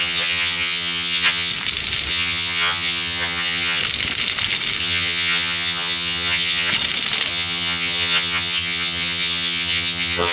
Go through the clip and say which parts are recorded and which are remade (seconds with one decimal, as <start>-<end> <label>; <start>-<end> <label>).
0.0-1.5 remade; 1.5-2.1 recorded; 2.1-3.8 remade; 3.8-4.8 recorded; 4.8-6.7 remade; 6.7-7.3 recorded; 7.3-10.3 remade